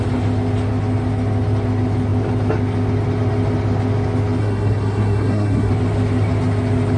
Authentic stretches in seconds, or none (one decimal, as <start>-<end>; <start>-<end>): 0.0-4.4; 5.7-7.0